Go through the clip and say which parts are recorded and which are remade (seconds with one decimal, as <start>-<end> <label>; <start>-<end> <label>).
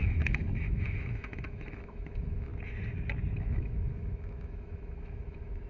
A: 0.0-2.5 remade; 2.5-3.4 recorded; 3.4-5.7 remade